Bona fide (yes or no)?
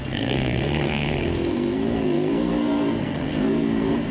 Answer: no